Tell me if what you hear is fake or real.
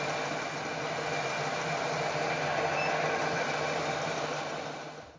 real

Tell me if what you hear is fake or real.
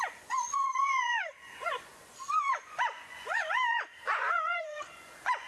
fake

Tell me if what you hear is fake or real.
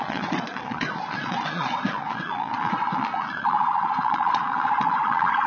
fake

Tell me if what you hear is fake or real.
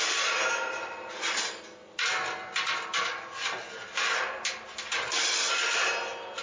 real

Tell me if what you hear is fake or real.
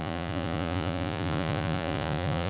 fake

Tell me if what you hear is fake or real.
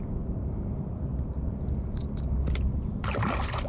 real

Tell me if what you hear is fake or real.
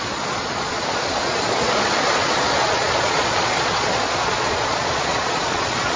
fake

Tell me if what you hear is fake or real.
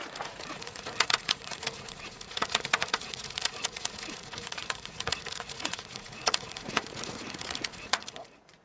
fake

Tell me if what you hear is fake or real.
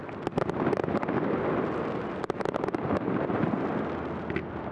real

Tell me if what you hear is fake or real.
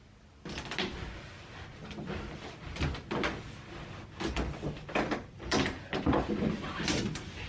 real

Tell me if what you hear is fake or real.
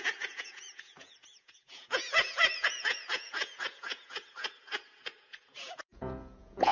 fake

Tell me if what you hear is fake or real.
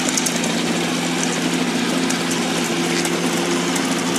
real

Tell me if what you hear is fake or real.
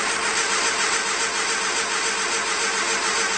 real